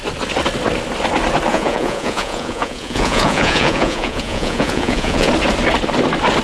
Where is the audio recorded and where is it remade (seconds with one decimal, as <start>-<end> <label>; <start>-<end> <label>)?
0.0-1.5 recorded; 1.5-5.3 remade; 5.3-6.4 recorded